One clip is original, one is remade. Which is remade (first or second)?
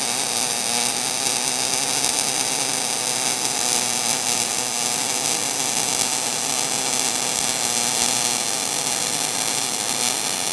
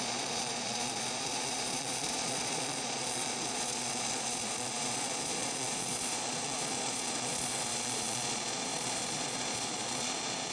second